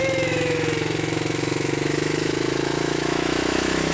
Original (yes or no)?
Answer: no